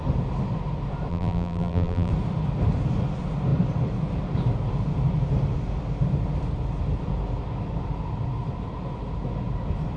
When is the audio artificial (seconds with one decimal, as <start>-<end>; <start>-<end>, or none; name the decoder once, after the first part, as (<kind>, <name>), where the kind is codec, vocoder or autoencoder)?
1.1-2.1 (vocoder, BigVGAN v2)